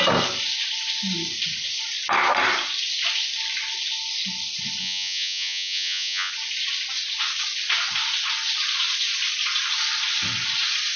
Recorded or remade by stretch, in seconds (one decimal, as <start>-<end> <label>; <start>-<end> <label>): 0.0-4.8 recorded; 4.8-6.3 remade; 6.3-11.0 recorded